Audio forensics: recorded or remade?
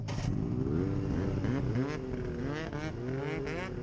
recorded